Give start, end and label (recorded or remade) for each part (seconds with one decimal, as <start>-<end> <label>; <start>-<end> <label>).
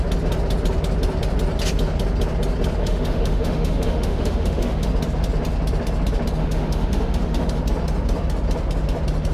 0.0-2.8 recorded; 2.8-4.9 remade; 4.9-6.4 recorded; 6.4-7.6 remade; 7.6-9.3 recorded